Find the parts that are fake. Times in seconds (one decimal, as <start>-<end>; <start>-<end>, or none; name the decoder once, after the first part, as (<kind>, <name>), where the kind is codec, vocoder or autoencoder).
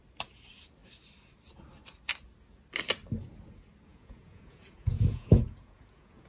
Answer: 3.9-6.3 (vocoder, Vocos)